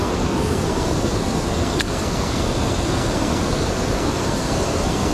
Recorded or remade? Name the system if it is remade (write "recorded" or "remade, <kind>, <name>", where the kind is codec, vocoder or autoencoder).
remade, codec, SNAC